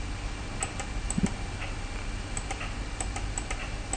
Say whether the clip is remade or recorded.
recorded